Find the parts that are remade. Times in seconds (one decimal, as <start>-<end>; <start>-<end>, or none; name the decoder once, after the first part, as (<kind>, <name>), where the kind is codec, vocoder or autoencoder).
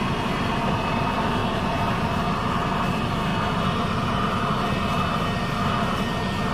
0.0-1.4 (vocoder, BigVGAN v2); 2.5-3.3